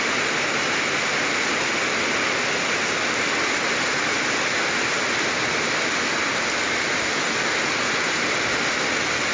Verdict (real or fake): real